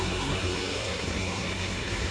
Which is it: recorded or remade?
remade